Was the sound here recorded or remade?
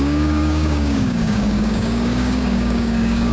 remade